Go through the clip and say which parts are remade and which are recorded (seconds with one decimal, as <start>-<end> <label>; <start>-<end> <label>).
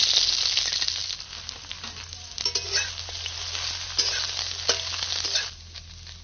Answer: 0.0-6.2 recorded